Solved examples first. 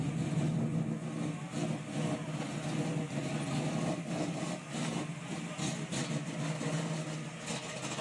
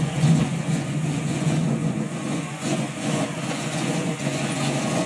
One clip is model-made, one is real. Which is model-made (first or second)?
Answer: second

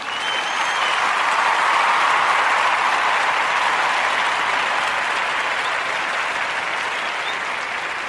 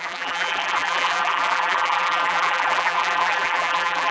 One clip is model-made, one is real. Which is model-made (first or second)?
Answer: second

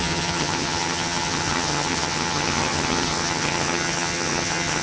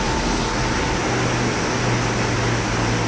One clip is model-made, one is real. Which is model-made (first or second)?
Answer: first